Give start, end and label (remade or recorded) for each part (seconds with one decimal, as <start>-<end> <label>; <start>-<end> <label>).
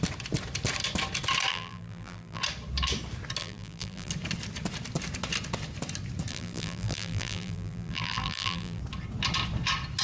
0.0-1.5 recorded; 1.5-2.4 remade; 2.4-3.4 recorded; 3.4-4.1 remade; 4.1-6.3 recorded; 6.3-8.8 remade; 8.8-10.0 recorded